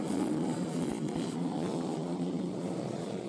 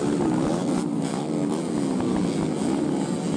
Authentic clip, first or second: second